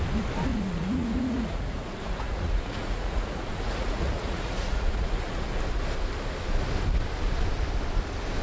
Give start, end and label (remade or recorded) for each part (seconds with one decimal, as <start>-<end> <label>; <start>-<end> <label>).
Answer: 0.0-0.5 recorded; 0.5-5.5 remade; 5.5-8.4 recorded